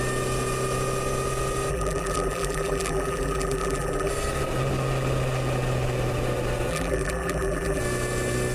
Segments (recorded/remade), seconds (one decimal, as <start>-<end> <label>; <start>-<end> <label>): 0.0-1.7 recorded; 1.7-4.1 remade; 4.1-6.7 recorded; 6.7-7.8 remade; 7.8-8.5 recorded